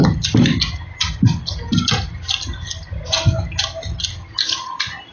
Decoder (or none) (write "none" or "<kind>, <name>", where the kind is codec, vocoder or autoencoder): none